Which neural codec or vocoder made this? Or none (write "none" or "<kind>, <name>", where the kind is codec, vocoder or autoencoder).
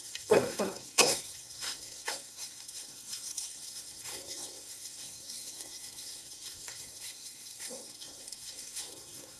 codec, SNAC